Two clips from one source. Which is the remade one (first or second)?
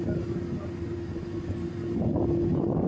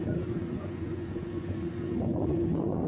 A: second